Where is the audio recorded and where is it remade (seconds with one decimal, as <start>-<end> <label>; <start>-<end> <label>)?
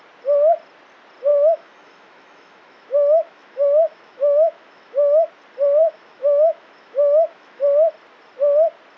0.0-1.3 recorded; 1.3-5.3 remade; 5.3-5.8 recorded; 5.8-7.6 remade; 7.6-9.0 recorded